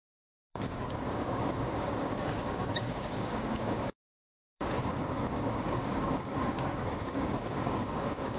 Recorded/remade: remade